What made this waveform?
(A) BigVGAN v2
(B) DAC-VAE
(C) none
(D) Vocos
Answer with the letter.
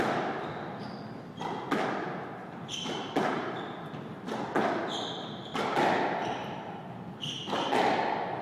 C